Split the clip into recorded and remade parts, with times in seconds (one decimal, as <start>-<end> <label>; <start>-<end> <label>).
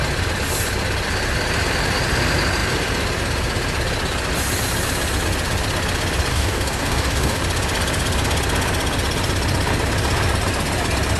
0.0-6.3 recorded; 6.3-7.4 remade; 7.4-11.2 recorded